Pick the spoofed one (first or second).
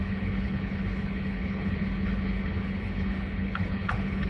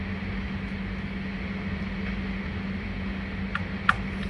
first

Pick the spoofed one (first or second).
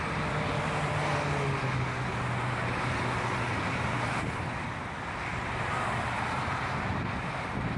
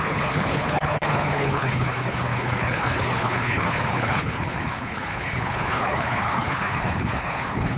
second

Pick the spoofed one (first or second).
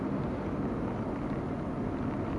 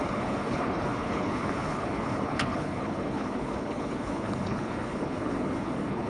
second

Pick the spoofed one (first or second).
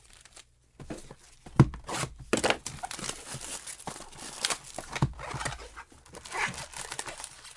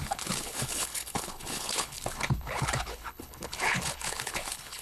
second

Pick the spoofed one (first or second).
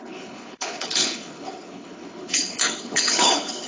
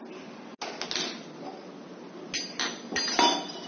first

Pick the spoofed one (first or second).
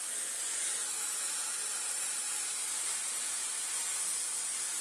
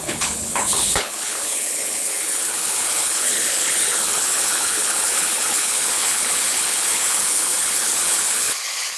second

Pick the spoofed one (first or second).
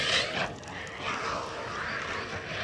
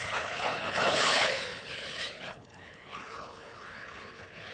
second